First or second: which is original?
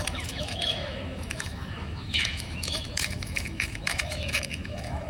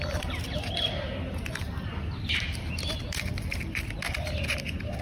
second